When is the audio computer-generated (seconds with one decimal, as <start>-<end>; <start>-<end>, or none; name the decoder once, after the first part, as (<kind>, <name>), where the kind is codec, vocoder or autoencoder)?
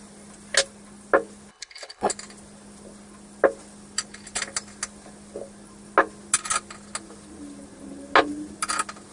1.5-2.1 (codec, HILCodec)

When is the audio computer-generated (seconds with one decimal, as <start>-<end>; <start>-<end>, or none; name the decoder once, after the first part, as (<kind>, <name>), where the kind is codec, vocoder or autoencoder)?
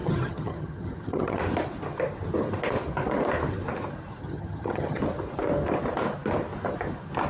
0.0-1.4 (vocoder, HiFi-GAN); 4.2-5.0